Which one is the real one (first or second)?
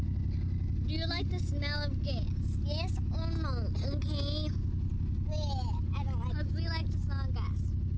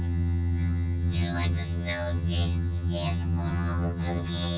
first